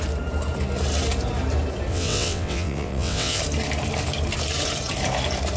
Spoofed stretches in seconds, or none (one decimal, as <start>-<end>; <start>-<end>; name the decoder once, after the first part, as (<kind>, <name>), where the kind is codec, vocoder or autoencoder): 1.9-3.4 (vocoder, WaveNeXt)